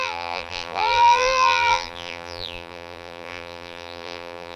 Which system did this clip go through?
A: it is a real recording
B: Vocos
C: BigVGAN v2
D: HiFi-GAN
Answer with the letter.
C